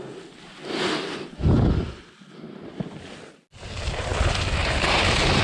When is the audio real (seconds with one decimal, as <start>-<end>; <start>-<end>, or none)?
0.0-5.4